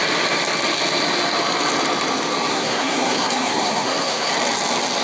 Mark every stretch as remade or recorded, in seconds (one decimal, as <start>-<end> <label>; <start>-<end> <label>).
0.0-2.5 recorded; 2.5-4.3 remade; 4.3-5.0 recorded